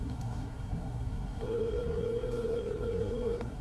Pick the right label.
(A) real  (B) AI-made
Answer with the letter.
B